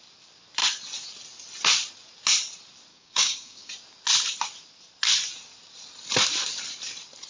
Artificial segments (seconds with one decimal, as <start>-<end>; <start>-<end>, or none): 2.9-3.7